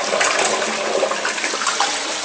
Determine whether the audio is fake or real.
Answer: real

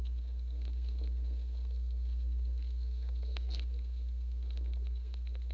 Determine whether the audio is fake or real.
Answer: fake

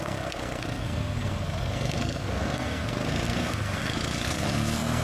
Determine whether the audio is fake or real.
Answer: fake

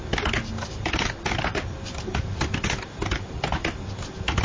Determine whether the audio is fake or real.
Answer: real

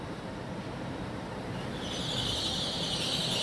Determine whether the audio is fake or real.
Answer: fake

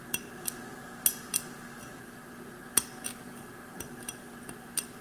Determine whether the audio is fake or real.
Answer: real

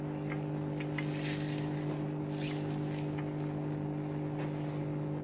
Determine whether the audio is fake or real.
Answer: real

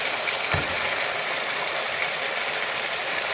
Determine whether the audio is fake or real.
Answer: real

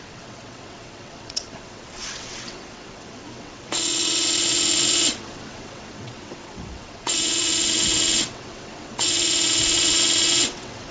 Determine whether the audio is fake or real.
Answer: fake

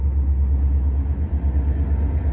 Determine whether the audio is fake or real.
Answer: real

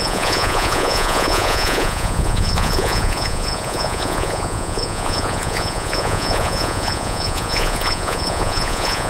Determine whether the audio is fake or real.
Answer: fake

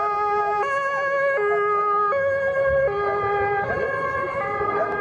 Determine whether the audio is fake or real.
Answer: real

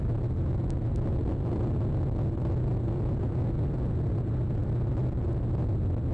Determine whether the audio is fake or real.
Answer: real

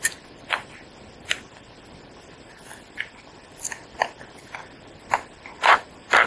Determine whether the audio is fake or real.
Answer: fake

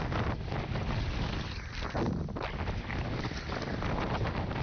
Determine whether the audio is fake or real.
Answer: real